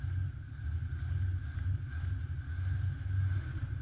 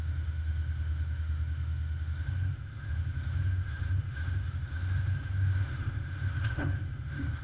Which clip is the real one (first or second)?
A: first